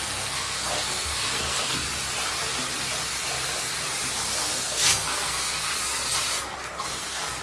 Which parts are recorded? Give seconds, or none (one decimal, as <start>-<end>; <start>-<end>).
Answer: 1.8-4.4; 5.7-6.8